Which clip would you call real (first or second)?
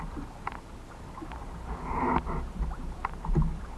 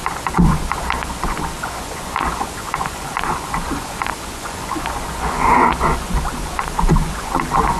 first